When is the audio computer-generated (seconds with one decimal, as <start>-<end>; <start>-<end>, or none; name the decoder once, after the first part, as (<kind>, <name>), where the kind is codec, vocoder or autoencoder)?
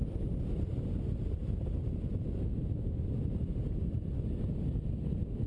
none